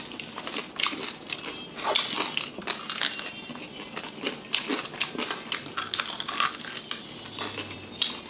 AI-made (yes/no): no